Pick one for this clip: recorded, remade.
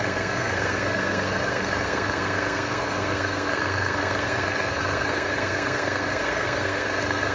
remade